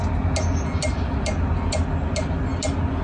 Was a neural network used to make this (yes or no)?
no